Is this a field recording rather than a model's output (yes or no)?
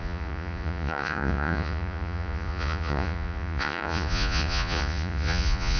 no